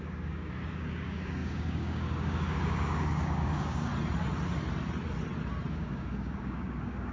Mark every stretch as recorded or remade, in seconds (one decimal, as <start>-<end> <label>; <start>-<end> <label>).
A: 0.0-3.9 remade; 3.9-5.7 recorded; 5.7-7.1 remade